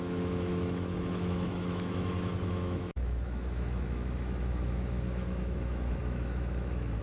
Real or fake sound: fake